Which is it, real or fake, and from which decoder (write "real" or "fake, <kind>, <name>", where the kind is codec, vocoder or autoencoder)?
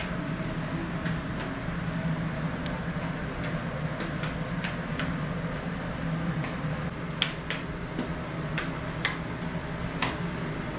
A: real